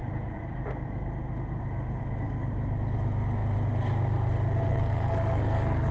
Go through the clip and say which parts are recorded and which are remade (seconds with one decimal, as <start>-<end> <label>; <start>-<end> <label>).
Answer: 0.0-4.7 recorded; 4.7-5.9 remade